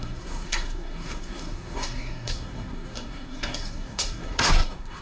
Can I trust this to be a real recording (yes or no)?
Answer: no